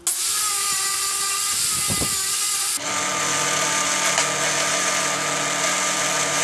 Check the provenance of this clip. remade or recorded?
recorded